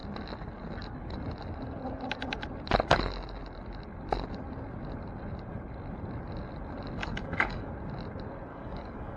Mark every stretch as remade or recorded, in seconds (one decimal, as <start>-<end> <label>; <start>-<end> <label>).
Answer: 0.0-7.0 recorded; 7.0-7.7 remade; 7.7-8.5 recorded; 8.5-9.2 remade